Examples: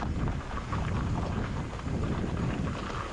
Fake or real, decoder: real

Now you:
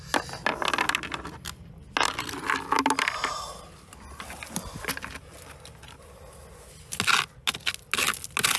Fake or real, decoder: real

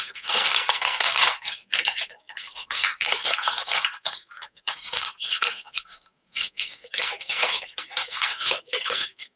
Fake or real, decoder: fake, codec, SNAC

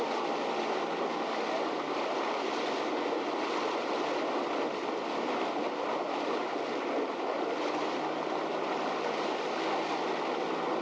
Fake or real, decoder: real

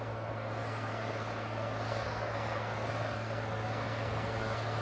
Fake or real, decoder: fake, codec, SNAC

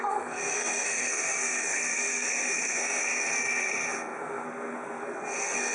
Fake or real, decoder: fake, codec, SNAC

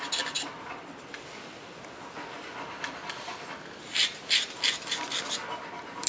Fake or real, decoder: real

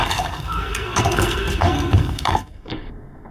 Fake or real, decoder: fake, codec, SNAC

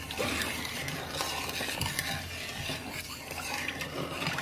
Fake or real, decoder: real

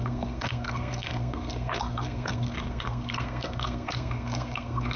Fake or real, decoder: fake, codec, SNAC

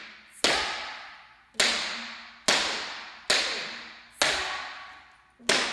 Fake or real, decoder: real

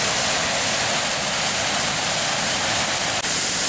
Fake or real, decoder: real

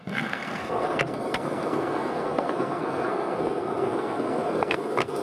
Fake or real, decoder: fake, codec, SNAC